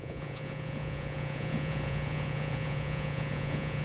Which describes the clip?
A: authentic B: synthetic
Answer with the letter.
B